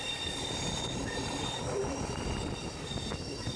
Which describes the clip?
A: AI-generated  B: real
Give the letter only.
B